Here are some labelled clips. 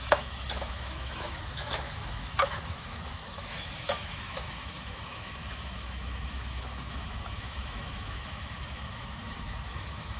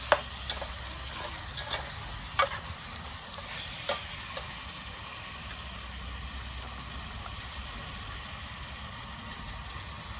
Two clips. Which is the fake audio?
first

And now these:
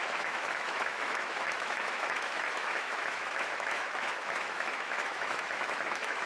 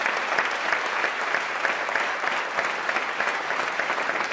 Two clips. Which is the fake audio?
first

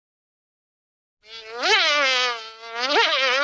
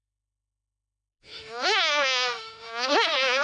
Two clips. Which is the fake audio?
second